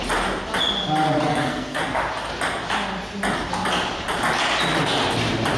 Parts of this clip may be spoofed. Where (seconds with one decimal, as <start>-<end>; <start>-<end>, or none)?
1.3-1.8